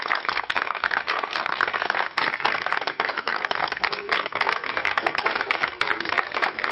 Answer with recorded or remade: remade